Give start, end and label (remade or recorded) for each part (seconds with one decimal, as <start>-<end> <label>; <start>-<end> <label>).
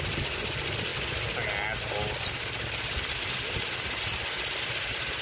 0.0-5.2 recorded